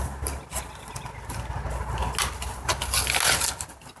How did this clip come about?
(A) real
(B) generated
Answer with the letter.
A